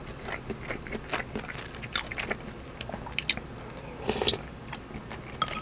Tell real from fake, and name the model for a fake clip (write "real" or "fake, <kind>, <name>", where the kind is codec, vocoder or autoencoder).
real